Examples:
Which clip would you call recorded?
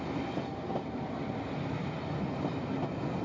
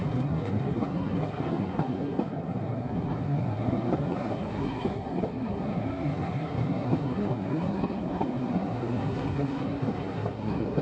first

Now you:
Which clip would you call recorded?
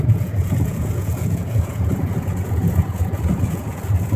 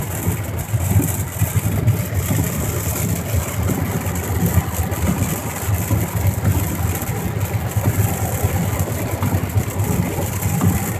second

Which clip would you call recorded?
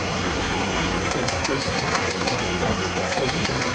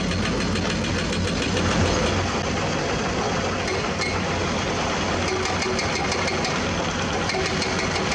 second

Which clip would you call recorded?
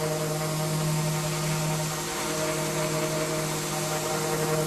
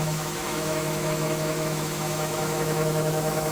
first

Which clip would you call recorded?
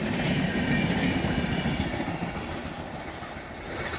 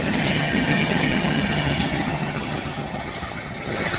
first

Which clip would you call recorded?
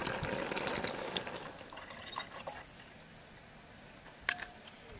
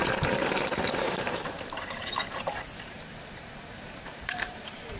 first